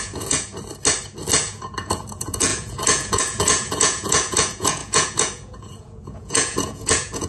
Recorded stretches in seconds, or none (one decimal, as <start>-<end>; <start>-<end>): 0.5-1.4